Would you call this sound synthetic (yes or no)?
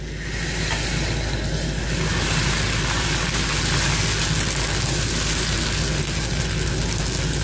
no